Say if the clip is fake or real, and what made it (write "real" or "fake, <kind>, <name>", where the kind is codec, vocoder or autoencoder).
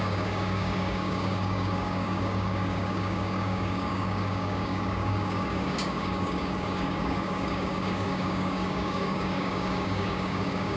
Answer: fake, codec, DAC